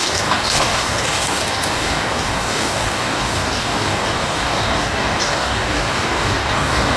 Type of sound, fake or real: fake